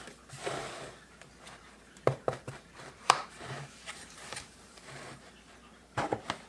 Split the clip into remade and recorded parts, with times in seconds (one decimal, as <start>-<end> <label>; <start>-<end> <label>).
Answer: 0.0-1.6 recorded; 1.6-5.5 remade; 5.5-6.5 recorded